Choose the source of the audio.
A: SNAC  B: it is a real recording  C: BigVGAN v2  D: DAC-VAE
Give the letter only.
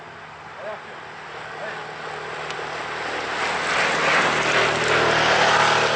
B